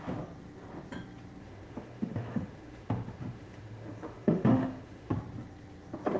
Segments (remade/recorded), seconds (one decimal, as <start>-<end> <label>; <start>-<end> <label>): 0.0-1.4 recorded; 1.4-5.1 remade; 5.1-6.2 recorded